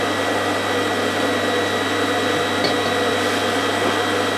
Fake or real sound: real